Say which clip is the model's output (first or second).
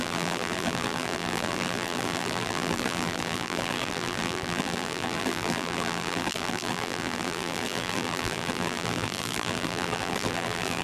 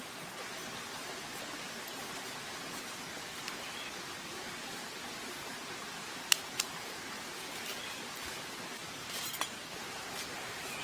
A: first